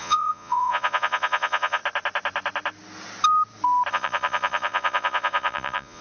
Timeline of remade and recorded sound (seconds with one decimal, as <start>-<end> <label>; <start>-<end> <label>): 0.0-1.8 remade; 1.8-3.9 recorded; 3.9-6.0 remade